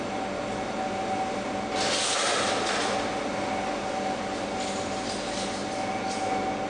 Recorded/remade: recorded